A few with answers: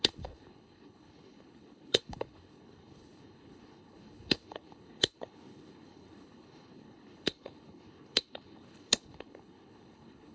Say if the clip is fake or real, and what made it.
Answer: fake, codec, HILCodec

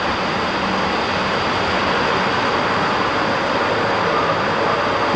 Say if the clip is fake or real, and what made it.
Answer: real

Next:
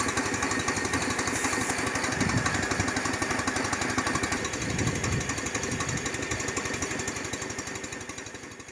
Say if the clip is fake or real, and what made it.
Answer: real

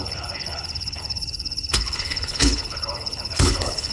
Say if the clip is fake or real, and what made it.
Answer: fake, codec, HILCodec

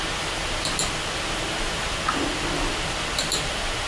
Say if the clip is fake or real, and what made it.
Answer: real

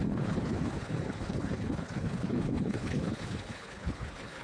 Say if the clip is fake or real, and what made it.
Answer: fake, codec, HILCodec